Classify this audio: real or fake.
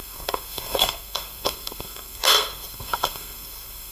fake